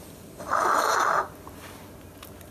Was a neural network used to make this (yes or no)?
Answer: no